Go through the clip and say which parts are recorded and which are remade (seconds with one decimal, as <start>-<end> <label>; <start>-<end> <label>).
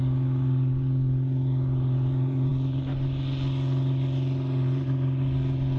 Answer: 0.0-5.8 recorded